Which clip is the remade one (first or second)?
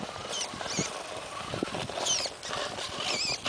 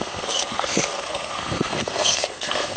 second